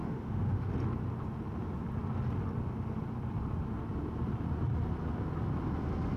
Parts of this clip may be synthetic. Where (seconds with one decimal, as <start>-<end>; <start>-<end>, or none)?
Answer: 0.0-0.7